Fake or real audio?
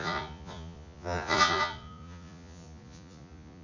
fake